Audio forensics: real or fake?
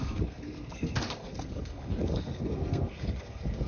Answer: fake